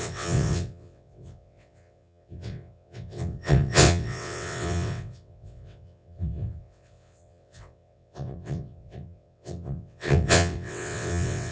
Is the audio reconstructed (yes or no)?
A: yes